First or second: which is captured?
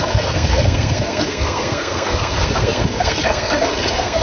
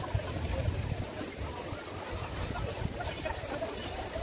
second